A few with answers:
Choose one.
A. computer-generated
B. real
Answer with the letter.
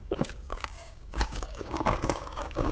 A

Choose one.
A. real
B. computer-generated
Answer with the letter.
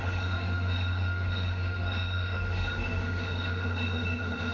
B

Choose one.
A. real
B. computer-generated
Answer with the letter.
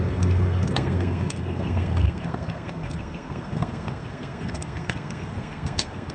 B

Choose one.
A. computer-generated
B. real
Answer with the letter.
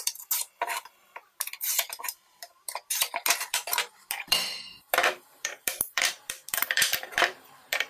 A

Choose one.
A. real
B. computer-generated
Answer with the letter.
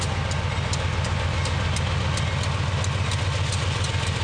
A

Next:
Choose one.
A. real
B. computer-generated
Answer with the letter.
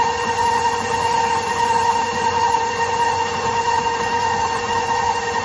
B